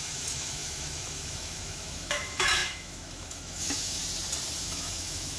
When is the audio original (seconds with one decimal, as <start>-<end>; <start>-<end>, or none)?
4.0-4.6